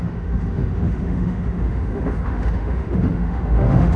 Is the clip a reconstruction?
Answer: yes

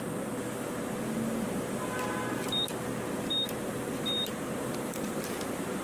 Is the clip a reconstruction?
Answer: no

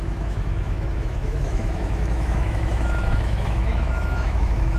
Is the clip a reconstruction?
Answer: yes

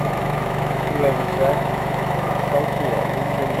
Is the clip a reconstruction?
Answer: yes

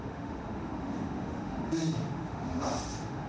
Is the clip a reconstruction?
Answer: yes